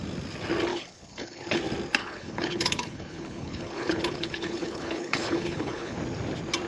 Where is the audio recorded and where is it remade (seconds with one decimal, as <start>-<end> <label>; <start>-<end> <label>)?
0.0-0.7 recorded; 0.7-1.6 remade; 1.6-2.0 recorded; 2.0-6.0 remade; 6.0-6.7 recorded